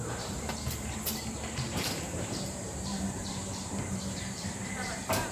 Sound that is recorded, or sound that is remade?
remade